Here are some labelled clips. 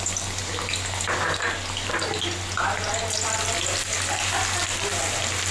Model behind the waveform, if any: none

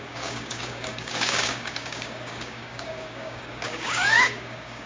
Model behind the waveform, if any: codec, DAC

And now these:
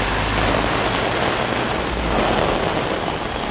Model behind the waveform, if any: none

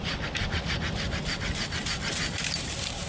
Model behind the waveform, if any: none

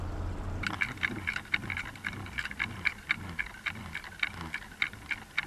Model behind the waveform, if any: none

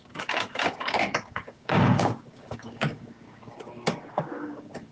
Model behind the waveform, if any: codec, DAC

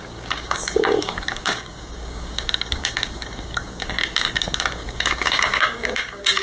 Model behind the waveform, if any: codec, DAC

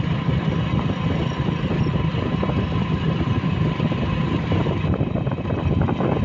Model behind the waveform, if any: none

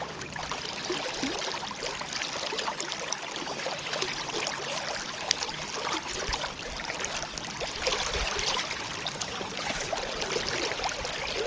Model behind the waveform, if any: none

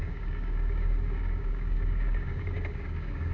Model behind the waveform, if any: codec, DAC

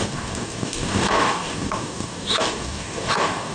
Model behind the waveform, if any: codec, DAC